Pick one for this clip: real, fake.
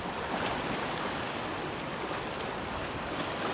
real